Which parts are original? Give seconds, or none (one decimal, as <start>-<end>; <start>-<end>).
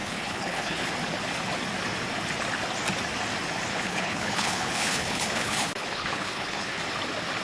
0.9-3.7; 6.8-7.4